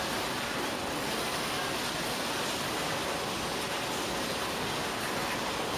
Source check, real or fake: real